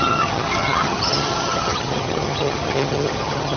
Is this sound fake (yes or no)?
yes